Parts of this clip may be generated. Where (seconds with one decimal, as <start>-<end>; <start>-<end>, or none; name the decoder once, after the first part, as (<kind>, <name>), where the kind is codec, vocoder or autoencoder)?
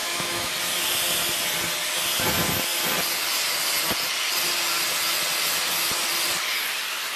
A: 0.0-0.5 (autoencoder, DAC-VAE)